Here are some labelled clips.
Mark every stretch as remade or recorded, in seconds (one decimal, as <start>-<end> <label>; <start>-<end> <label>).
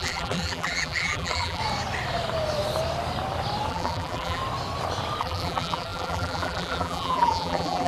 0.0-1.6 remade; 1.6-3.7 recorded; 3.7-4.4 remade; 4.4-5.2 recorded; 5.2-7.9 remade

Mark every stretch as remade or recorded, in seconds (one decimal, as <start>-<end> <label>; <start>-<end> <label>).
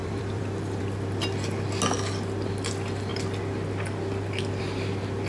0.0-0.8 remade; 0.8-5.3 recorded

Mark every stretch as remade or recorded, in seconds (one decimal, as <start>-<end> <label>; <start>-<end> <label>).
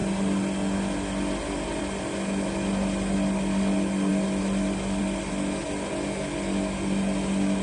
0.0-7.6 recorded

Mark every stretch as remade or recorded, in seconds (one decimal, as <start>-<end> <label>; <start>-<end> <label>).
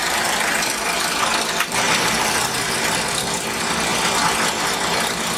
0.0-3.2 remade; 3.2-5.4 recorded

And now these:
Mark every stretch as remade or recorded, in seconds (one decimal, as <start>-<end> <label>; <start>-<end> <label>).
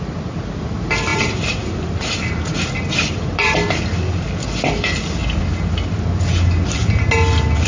0.0-1.1 recorded; 1.1-3.8 remade; 3.8-7.7 recorded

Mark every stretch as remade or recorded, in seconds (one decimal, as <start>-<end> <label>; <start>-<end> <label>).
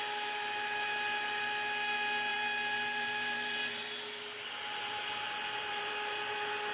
0.0-2.3 recorded; 2.3-5.9 remade; 5.9-6.7 recorded